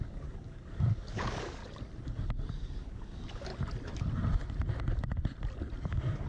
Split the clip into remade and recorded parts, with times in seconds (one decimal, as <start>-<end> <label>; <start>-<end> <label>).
0.0-1.6 remade; 1.6-2.5 recorded; 2.5-3.5 remade; 3.5-5.8 recorded; 5.8-6.3 remade